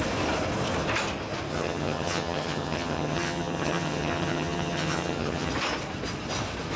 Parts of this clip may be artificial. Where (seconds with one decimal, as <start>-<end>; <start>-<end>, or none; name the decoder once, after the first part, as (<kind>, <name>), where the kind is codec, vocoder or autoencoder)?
1.5-5.5 (vocoder, HiFi-GAN)